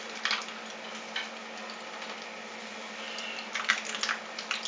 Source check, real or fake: real